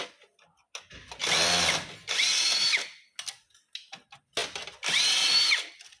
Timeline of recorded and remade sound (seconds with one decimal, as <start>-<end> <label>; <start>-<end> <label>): 0.0-6.0 recorded